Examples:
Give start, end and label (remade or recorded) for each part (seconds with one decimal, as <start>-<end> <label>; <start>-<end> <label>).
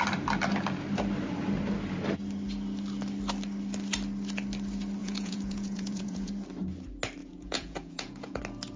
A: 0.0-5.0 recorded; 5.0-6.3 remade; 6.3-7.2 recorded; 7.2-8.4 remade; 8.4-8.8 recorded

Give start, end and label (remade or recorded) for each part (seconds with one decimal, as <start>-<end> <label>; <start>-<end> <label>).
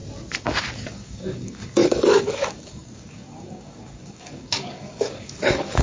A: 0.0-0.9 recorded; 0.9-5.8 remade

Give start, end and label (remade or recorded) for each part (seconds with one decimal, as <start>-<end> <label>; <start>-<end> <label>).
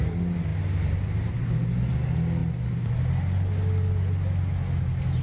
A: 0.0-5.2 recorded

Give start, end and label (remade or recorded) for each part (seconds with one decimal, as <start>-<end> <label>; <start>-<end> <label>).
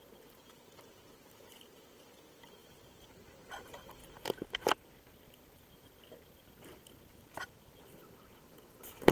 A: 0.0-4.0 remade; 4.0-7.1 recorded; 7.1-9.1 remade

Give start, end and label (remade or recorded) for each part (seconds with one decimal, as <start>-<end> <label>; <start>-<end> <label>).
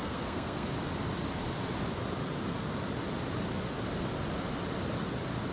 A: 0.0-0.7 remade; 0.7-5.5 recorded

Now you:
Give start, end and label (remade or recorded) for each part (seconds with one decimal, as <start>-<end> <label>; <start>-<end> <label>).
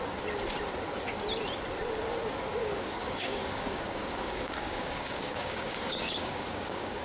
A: 0.0-2.6 recorded; 2.6-7.0 remade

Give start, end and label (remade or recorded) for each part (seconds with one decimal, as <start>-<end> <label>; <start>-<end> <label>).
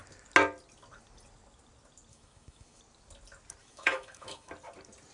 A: 0.0-2.1 recorded; 2.1-2.8 remade; 2.8-3.6 recorded; 3.6-4.5 remade; 4.5-5.1 recorded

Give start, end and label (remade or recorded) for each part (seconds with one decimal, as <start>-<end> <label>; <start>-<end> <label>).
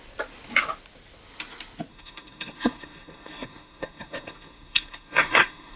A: 0.0-1.9 recorded; 1.9-5.8 remade